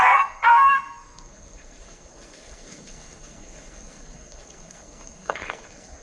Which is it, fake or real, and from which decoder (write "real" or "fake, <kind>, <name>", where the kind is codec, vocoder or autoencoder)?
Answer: fake, codec, SNAC